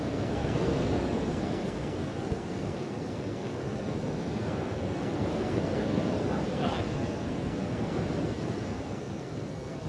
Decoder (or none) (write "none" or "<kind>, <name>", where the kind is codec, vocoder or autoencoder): codec, SNAC